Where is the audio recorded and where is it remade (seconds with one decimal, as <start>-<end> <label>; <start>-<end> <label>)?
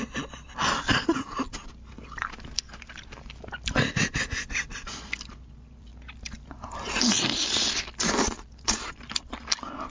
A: 0.0-9.9 recorded